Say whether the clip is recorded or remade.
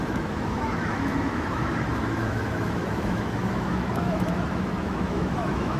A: remade